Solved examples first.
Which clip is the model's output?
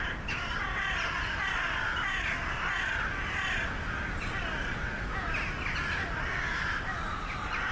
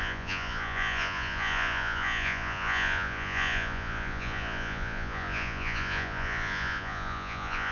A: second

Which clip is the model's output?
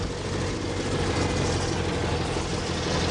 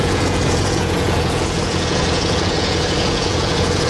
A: second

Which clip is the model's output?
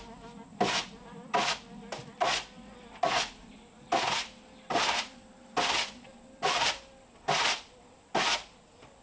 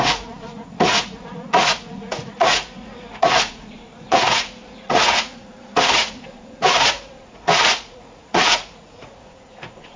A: second